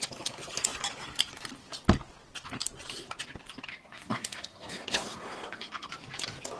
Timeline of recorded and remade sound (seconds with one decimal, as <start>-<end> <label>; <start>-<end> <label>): 0.0-3.7 recorded; 3.7-5.9 remade; 5.9-6.6 recorded